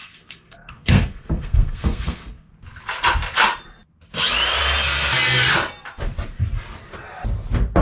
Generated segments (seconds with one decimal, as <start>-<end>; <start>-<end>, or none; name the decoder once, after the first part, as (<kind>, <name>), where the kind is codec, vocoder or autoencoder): 0.0-2.5 (codec, SNAC)